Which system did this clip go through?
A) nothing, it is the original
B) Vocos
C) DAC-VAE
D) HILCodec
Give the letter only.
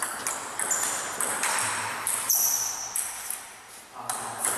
A